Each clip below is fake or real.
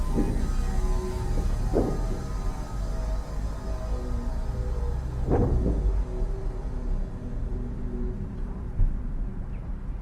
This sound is real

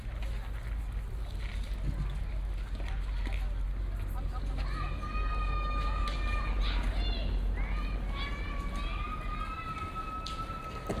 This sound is real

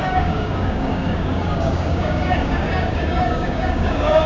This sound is fake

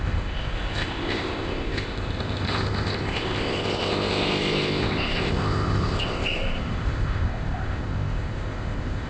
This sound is fake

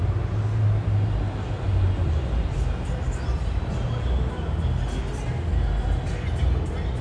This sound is real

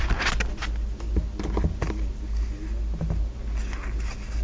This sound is real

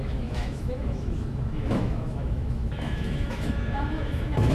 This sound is fake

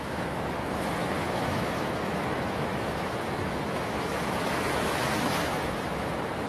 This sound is fake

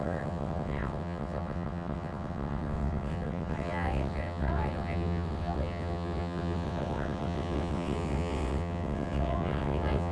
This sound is fake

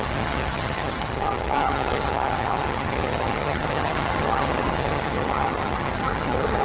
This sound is fake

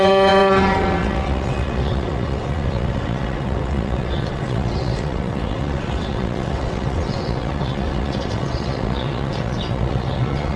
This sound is fake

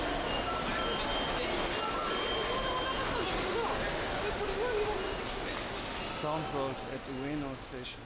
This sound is real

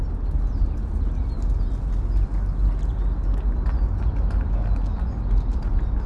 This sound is real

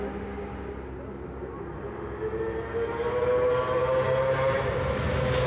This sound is real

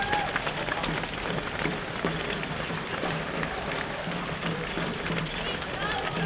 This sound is fake